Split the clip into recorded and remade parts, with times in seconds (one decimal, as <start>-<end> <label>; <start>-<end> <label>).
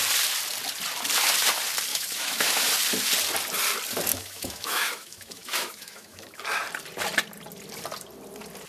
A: 0.0-1.9 recorded; 1.9-2.7 remade; 2.7-4.1 recorded; 4.1-6.4 remade; 6.4-8.7 recorded